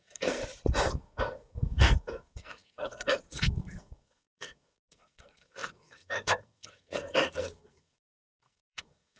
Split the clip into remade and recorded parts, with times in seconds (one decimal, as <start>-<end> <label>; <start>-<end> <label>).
0.0-0.4 remade; 0.4-0.9 recorded; 0.9-9.2 remade